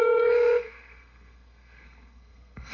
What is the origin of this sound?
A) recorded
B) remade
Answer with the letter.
B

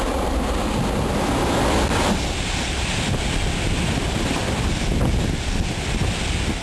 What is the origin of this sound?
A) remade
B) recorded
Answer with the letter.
B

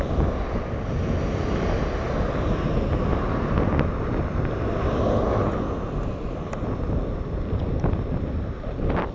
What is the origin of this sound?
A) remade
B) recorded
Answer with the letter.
B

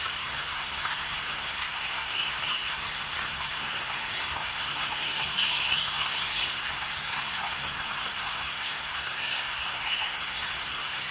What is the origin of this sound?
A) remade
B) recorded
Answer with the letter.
A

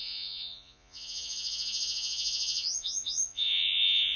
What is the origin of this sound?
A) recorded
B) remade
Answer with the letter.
B